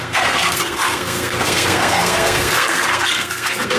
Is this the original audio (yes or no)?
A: no